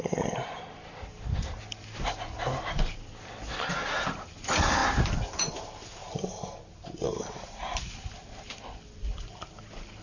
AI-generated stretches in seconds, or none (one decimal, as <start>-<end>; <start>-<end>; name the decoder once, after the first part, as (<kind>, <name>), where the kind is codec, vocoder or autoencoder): none